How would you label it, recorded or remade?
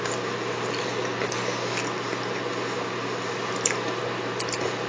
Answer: recorded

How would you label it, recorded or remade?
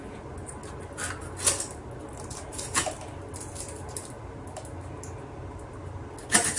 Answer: recorded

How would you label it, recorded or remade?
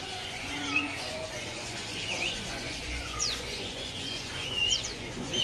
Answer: remade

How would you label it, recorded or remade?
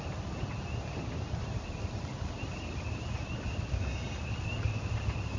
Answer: recorded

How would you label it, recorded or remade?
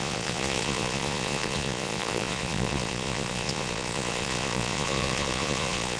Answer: remade